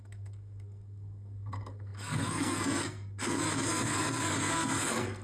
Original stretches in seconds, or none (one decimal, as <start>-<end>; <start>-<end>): none